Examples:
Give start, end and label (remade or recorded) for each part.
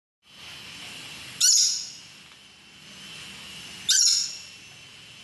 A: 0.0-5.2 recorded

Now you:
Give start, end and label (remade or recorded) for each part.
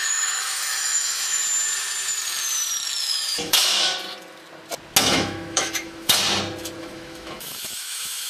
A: 0.0-1.4 remade; 1.4-3.0 recorded; 3.0-3.9 remade; 3.9-5.0 recorded; 5.0-6.2 remade; 6.2-6.8 recorded; 6.8-8.3 remade